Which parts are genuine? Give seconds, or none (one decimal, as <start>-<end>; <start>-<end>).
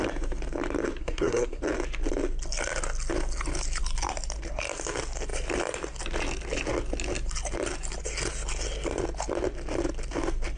0.0-1.0; 1.6-10.6